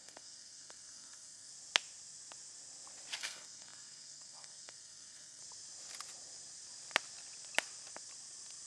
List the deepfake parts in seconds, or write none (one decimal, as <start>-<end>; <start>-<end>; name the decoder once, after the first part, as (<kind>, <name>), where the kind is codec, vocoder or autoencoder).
0.0-1.5 (codec, SNAC); 3.2-5.4